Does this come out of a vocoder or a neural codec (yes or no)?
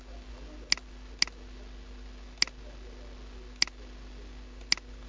no